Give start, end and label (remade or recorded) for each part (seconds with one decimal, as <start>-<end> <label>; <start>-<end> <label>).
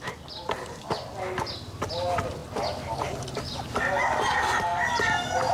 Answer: 0.0-5.5 recorded